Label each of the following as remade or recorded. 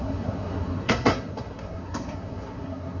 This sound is remade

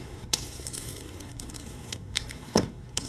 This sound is remade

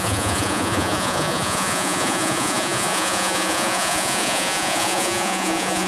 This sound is remade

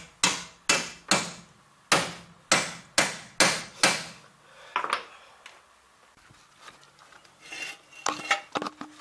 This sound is recorded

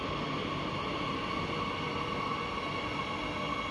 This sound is recorded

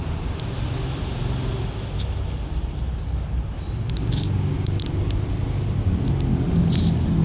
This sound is recorded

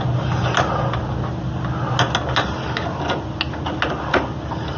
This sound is recorded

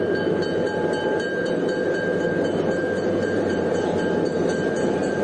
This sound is remade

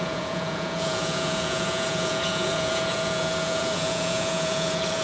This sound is remade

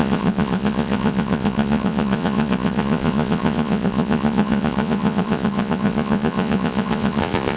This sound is remade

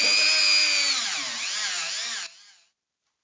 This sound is recorded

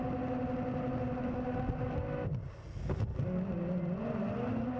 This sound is recorded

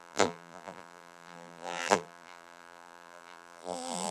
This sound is remade